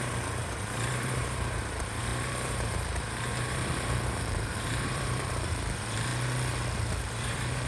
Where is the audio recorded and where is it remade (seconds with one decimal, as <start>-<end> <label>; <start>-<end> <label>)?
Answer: 0.0-6.1 remade; 6.1-6.8 recorded; 6.8-7.7 remade